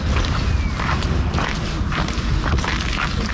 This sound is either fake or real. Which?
real